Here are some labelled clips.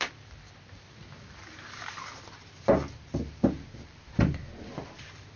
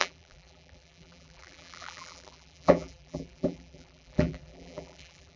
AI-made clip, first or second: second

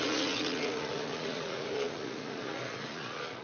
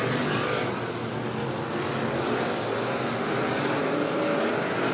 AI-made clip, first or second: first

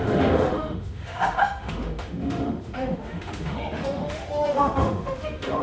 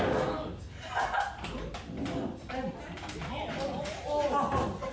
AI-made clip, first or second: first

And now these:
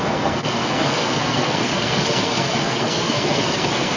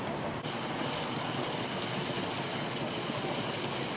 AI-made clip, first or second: first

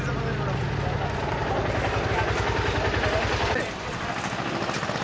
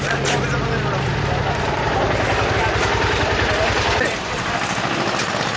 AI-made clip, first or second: second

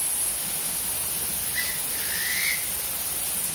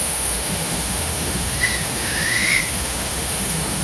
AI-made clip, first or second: second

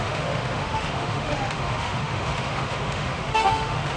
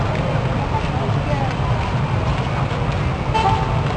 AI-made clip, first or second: first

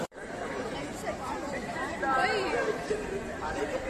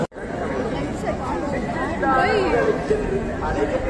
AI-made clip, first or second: first